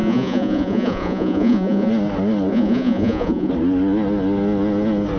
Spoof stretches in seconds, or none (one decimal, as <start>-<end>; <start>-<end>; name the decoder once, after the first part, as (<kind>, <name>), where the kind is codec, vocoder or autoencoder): 0.0-1.9 (vocoder, Vocos); 2.5-3.5